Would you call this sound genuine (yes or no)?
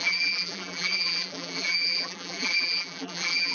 no